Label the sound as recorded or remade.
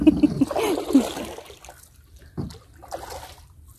recorded